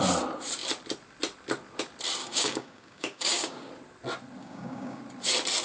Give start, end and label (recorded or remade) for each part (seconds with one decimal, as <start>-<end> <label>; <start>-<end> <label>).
0.0-2.2 recorded; 2.2-3.7 remade; 3.7-4.4 recorded; 4.4-5.0 remade; 5.0-5.6 recorded